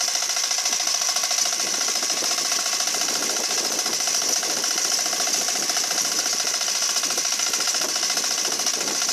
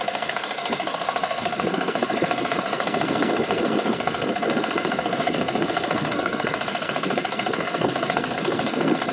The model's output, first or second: second